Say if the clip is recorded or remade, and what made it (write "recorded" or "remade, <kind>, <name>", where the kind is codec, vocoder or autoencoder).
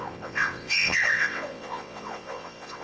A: remade, vocoder, WaveNeXt